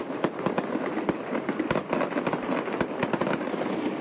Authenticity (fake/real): real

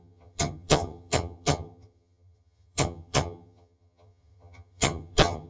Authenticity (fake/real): fake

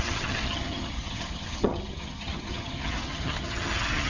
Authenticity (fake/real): fake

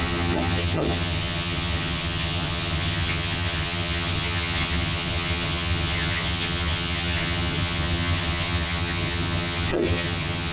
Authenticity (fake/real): fake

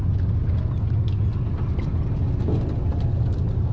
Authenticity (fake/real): real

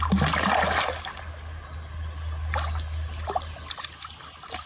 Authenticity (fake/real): real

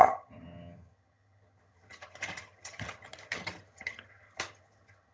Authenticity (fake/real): fake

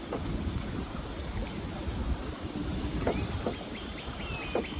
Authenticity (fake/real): real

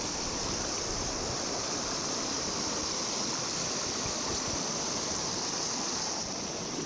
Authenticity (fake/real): real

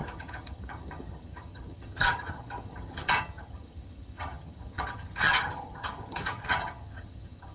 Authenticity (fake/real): fake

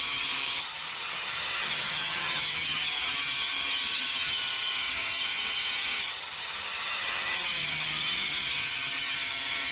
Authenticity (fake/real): fake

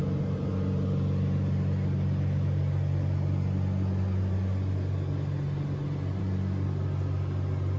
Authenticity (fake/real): real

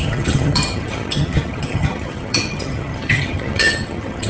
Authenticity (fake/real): fake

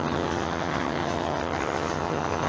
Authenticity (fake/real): fake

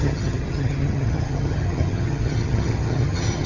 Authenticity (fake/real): fake